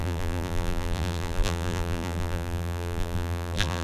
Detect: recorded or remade remade